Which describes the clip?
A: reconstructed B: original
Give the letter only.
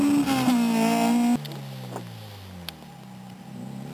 B